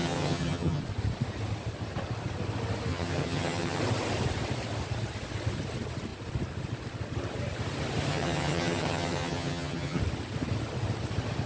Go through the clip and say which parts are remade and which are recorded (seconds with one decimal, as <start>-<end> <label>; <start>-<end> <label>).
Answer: 0.0-0.8 remade; 0.8-2.9 recorded; 2.9-3.8 remade; 3.8-8.1 recorded; 8.1-10.0 remade; 10.0-11.5 recorded